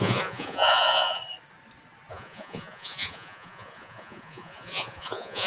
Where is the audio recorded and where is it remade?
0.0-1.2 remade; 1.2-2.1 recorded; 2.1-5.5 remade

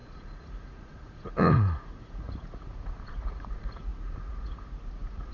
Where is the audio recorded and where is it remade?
0.0-5.3 remade

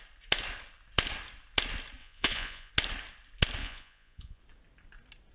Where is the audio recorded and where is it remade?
0.0-2.0 recorded; 2.0-2.7 remade; 2.7-3.6 recorded; 3.6-4.4 remade; 4.4-5.3 recorded